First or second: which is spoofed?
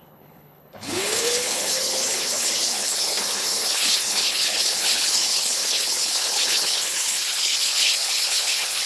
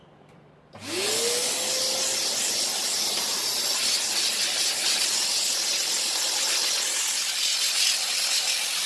first